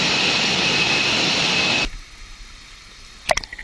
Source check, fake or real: real